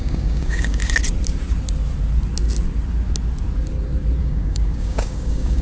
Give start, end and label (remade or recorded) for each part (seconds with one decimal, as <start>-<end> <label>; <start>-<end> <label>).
0.0-0.8 remade; 0.8-4.2 recorded; 4.2-5.6 remade